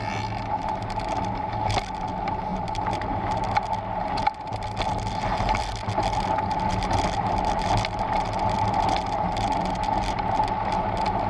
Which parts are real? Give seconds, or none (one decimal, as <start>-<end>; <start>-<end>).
0.0-2.5; 3.3-4.9; 5.7-6.7; 10.6-11.3